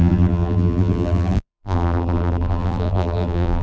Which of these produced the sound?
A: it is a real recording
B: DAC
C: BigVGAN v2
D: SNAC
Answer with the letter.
C